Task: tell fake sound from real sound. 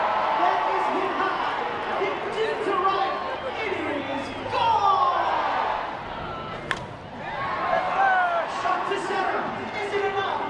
real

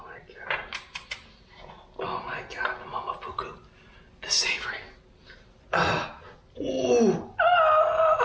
real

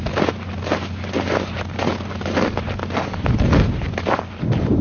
real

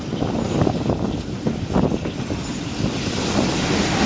real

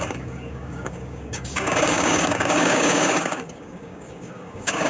fake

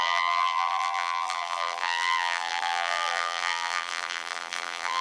fake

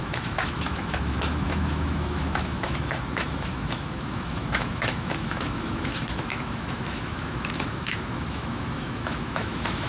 fake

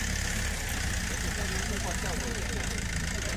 real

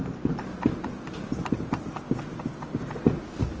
real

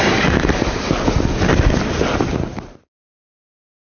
real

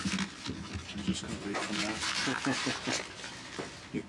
real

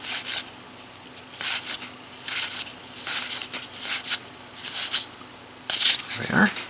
real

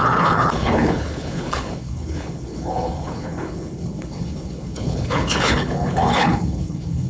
fake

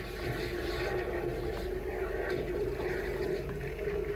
real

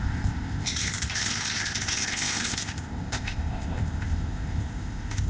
fake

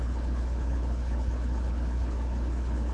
fake